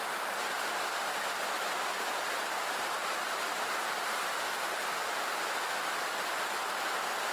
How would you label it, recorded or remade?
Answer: recorded